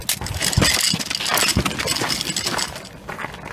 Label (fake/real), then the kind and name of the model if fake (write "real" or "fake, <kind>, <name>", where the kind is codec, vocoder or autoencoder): real